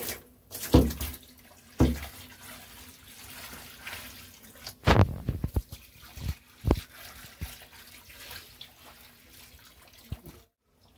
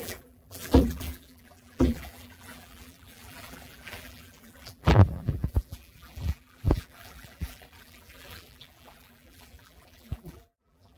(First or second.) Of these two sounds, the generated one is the second